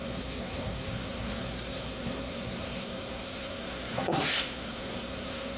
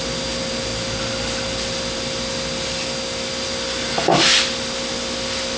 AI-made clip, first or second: first